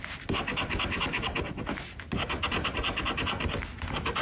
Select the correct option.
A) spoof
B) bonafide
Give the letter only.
B